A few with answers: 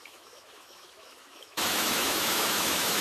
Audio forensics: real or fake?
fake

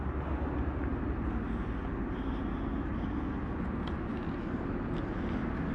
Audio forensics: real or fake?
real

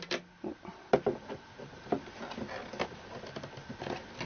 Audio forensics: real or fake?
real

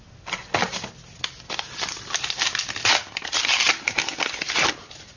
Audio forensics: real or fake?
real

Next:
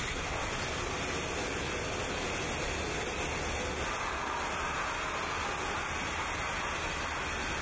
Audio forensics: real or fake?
real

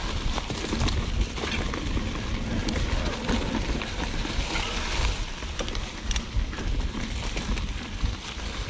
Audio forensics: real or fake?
real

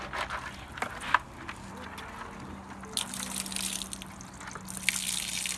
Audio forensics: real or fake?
real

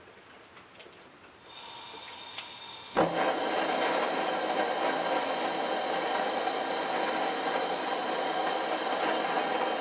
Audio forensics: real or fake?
real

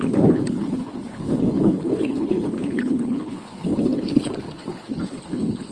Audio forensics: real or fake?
fake